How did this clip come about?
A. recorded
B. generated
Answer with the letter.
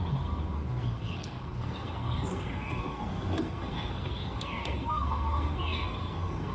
B